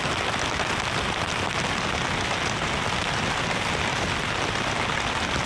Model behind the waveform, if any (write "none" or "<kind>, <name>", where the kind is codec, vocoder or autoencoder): none